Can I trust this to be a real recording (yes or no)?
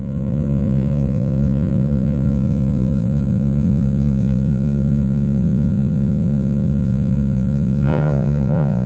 no